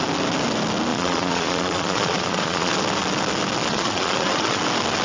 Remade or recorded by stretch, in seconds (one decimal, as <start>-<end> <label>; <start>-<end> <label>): 0.0-0.9 recorded; 0.9-2.7 remade; 2.7-3.7 recorded; 3.7-4.6 remade; 4.6-5.0 recorded